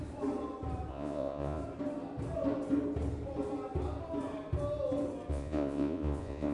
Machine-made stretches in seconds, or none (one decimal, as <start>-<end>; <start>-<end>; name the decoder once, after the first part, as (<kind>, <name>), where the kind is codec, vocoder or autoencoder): 0.9-1.6 (vocoder, Vocos); 5.3-6.5